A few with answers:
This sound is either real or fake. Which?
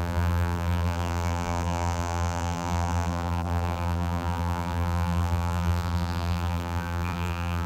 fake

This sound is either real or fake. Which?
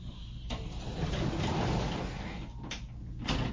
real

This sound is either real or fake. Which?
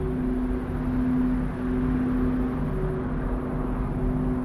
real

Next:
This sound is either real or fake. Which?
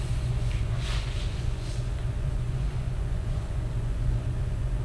fake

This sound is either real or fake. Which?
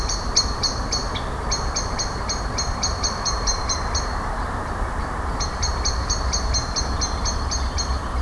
fake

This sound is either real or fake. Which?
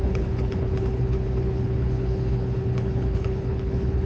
fake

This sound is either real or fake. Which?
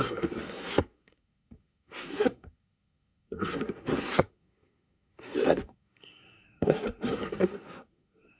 fake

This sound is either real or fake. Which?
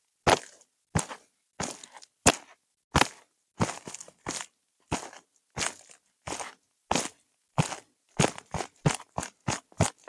real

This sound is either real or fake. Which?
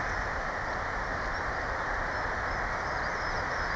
real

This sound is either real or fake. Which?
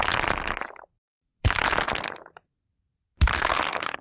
real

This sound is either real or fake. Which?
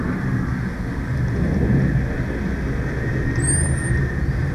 real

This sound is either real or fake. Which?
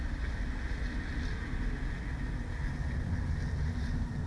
real